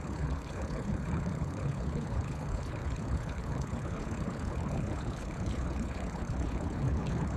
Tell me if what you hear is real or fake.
fake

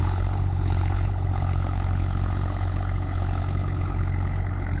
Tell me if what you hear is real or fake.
fake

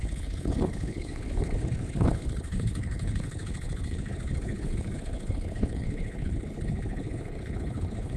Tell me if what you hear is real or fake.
fake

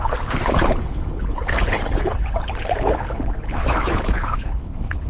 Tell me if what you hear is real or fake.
fake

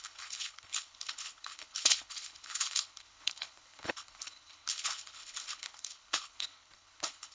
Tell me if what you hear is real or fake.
fake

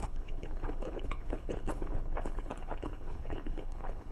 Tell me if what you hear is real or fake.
fake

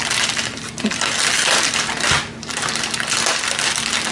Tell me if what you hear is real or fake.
real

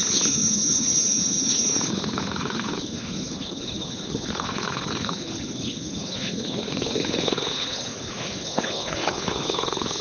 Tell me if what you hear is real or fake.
fake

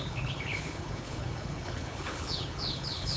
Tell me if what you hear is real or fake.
fake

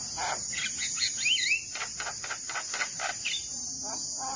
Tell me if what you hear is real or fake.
real